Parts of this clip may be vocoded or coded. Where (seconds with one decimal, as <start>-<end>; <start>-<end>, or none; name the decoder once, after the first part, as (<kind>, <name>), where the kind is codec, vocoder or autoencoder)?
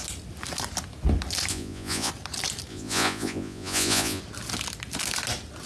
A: 1.5-2.1 (vocoder, Vocos); 2.7-4.2